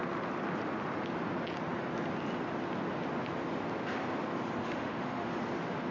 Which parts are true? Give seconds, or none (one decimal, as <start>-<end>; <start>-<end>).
0.0-4.6; 5.4-5.9